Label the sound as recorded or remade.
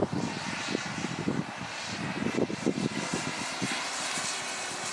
recorded